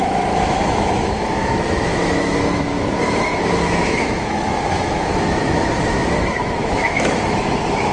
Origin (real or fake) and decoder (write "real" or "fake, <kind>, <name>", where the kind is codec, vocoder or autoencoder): fake, autoencoder, DAC-VAE